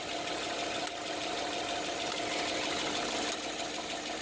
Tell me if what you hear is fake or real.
real